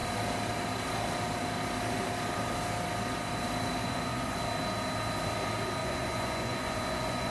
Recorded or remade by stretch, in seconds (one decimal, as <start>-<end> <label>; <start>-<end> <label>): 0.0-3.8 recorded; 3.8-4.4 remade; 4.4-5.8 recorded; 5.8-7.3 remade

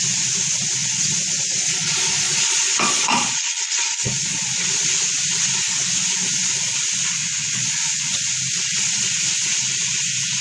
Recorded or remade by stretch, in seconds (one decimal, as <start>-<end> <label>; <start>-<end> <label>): 0.0-0.8 recorded; 0.8-4.4 remade; 4.4-7.2 recorded; 7.2-8.3 remade; 8.3-10.4 recorded

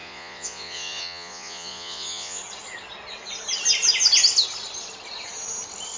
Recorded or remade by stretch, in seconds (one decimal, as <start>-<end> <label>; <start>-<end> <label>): 0.0-2.4 remade; 2.4-6.0 recorded

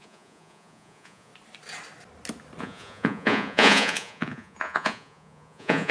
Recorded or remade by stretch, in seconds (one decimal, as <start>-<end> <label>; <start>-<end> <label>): 0.0-1.3 remade; 1.3-2.6 recorded; 2.6-5.9 remade

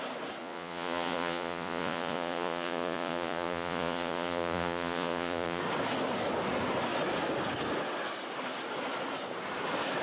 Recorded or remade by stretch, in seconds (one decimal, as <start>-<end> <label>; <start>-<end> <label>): 0.0-0.4 recorded; 0.4-5.6 remade; 5.6-10.0 recorded